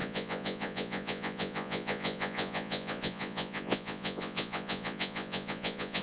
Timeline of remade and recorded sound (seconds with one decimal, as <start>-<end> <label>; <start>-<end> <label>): 0.0-6.0 remade